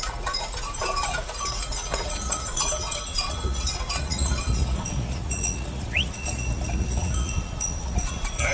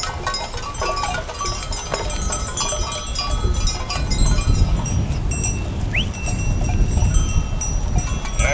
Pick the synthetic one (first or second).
first